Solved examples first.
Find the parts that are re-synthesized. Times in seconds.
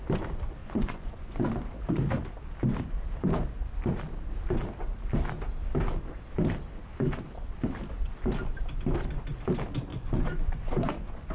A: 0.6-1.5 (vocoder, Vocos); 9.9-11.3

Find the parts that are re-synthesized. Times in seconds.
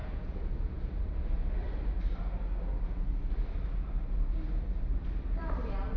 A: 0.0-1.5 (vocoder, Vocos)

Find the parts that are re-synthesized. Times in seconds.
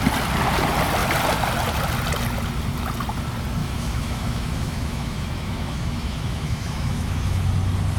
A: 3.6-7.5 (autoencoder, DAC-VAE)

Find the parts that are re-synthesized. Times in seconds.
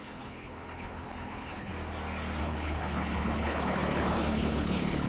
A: 0.0-1.7 (codec, HILCodec); 2.4-5.1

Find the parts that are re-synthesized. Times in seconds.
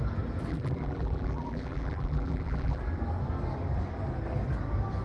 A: 0.5-2.8 (vocoder, BigVGAN v2)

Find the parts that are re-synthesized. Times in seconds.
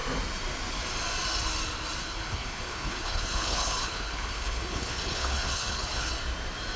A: 2.0-6.1 (codec, HILCodec)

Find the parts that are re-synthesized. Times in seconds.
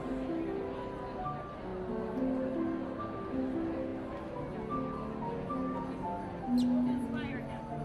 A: none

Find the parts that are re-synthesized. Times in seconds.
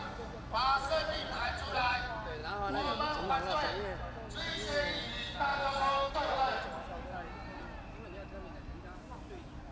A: 1.0-2.0 (vocoder, Vocos)